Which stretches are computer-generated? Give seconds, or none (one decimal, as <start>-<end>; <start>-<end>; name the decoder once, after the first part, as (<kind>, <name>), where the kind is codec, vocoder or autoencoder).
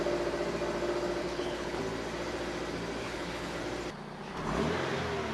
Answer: 1.2-1.8 (codec, HILCodec); 3.0-3.6